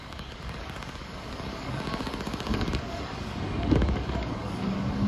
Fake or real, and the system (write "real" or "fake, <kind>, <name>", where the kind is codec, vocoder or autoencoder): fake, codec, DAC